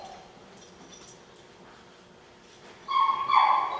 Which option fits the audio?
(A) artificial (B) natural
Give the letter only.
B